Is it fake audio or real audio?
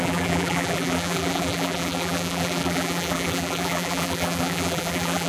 fake